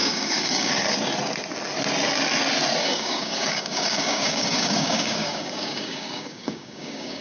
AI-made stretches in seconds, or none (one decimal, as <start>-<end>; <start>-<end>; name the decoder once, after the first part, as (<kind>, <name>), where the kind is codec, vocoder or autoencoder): 0.0-0.7 (codec, DAC); 2.8-7.2